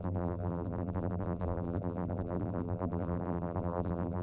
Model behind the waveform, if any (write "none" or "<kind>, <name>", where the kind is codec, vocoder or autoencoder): vocoder, BigVGAN v2